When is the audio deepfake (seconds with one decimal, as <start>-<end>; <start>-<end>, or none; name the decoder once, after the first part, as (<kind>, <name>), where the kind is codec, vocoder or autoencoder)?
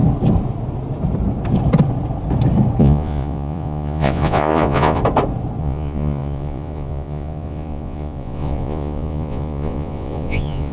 2.8-5.0 (vocoder, Vocos); 5.6-10.7